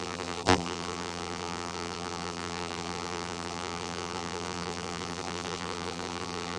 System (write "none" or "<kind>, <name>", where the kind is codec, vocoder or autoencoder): vocoder, BigVGAN v2